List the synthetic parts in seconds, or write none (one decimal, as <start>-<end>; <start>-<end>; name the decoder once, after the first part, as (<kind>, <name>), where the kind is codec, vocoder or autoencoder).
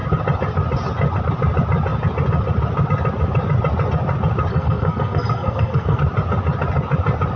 4.5-6.0 (codec, SNAC)